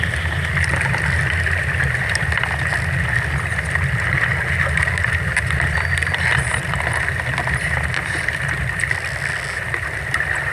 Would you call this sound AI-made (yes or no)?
no